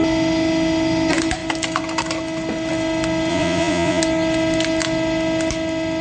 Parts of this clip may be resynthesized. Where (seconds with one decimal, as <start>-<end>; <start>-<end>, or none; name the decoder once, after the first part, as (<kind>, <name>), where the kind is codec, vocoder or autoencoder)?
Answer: 3.3-4.0 (vocoder, Vocos)